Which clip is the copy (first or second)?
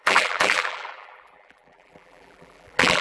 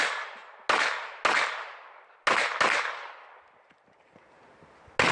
first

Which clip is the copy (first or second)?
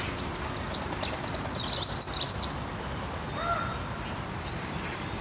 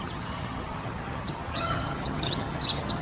second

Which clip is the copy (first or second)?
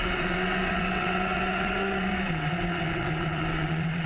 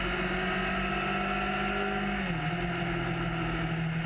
first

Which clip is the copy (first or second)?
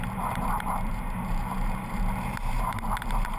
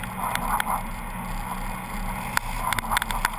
first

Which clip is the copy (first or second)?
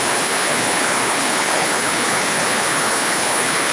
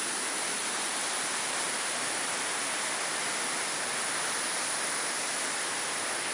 first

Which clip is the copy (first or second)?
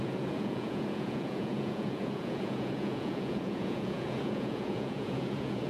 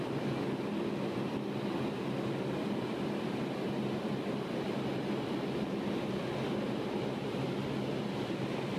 first